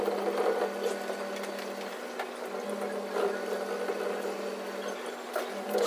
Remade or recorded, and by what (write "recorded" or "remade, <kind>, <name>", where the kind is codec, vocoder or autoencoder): recorded